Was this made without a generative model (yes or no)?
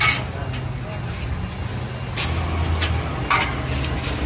yes